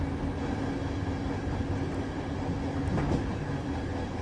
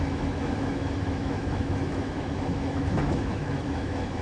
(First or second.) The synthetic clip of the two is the second